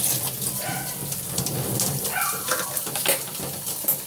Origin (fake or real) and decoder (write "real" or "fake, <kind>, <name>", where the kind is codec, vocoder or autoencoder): real